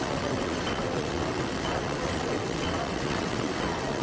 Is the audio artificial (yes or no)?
yes